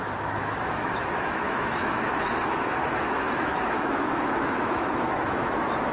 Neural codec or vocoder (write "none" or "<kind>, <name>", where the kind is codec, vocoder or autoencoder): autoencoder, DAC-VAE